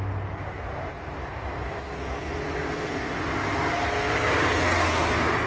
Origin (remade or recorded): recorded